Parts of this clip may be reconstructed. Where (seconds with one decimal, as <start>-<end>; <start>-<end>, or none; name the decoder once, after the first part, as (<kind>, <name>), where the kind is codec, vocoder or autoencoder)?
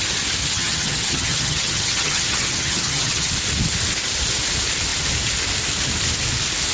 0.4-3.3 (vocoder, HiFi-GAN)